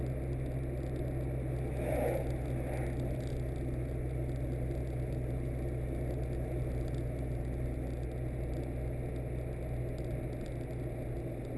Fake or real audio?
real